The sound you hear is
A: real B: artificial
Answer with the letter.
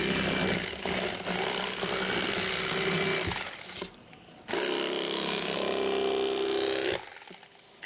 A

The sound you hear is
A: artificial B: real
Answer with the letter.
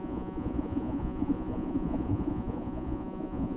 A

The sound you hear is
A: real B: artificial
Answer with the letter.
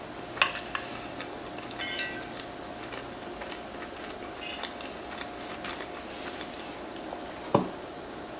A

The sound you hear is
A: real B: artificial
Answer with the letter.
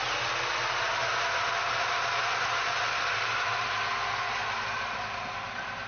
A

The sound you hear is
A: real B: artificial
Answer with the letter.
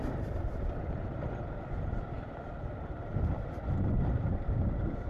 A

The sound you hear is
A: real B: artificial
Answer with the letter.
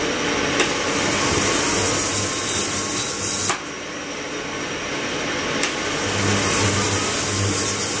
A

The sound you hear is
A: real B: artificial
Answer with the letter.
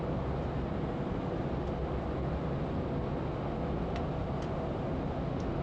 A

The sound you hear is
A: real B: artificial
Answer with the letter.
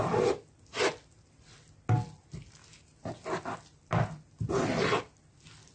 A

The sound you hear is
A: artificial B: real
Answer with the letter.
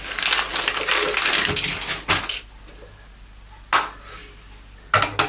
B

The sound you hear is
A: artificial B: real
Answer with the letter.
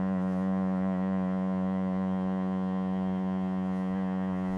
A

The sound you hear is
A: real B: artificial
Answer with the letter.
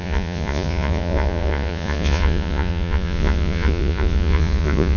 B